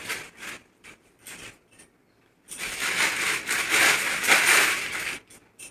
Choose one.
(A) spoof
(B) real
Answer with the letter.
B